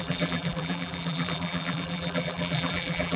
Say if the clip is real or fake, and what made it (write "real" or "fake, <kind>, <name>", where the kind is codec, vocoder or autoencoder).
fake, vocoder, BigVGAN v2